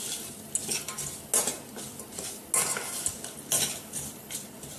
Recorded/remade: recorded